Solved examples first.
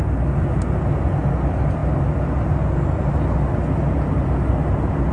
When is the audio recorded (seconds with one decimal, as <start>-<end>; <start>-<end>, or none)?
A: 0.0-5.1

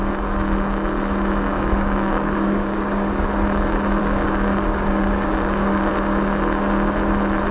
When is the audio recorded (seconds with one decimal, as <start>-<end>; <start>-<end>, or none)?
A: 0.0-1.5; 3.3-4.0; 5.9-7.5

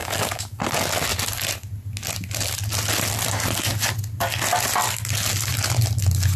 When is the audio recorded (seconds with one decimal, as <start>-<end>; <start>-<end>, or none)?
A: 0.6-6.4